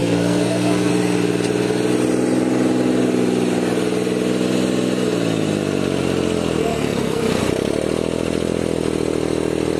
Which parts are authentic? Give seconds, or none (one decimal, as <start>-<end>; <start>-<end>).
0.9-6.6; 7.4-9.8